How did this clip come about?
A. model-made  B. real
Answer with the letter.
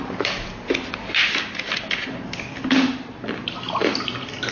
B